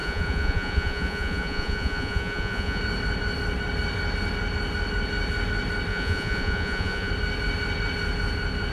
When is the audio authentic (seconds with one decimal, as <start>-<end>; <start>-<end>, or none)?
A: 2.8-5.9; 7.1-8.7